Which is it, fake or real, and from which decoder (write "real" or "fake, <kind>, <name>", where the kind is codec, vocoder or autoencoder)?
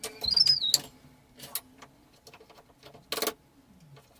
real